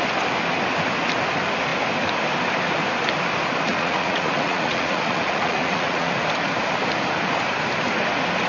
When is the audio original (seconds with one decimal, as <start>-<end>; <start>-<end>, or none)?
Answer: 0.0-3.7; 6.1-8.5